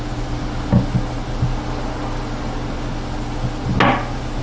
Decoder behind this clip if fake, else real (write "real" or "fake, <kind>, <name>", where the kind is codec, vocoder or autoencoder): real